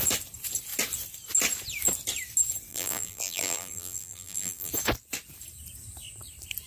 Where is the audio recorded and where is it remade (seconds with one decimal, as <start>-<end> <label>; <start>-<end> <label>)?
0.0-2.7 recorded; 2.7-4.7 remade; 4.7-6.7 recorded